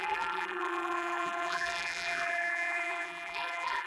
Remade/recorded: remade